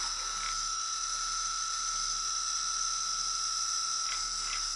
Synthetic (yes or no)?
no